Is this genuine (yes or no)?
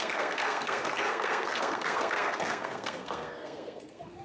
no